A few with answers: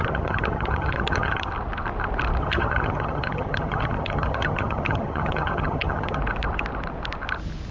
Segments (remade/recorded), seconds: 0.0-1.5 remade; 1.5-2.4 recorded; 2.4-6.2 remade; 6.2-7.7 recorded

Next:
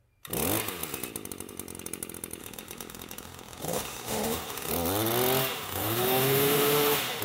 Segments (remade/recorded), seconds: 0.0-2.4 recorded; 2.4-4.7 remade; 4.7-5.4 recorded; 5.4-7.2 remade

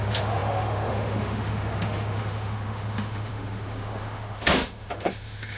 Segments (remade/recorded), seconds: 0.0-5.6 remade

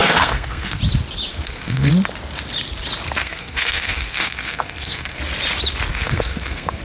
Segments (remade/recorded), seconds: 0.0-0.8 remade; 0.8-1.3 recorded; 1.3-1.9 remade; 1.9-3.2 recorded; 3.2-5.2 remade; 5.2-5.9 recorded; 5.9-6.8 remade

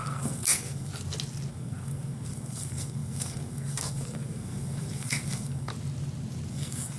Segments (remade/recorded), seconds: 0.0-0.9 remade; 0.9-1.5 recorded; 1.5-5.7 remade; 5.7-6.5 recorded; 6.5-7.0 remade

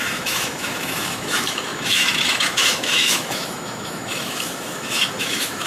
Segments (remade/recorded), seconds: 0.0-5.7 remade

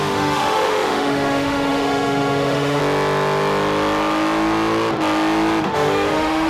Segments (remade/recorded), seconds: 0.0-2.8 remade; 2.8-5.6 recorded; 5.6-6.5 remade

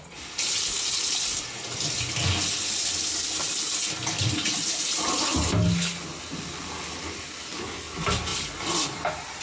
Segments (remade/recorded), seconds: 0.0-9.4 recorded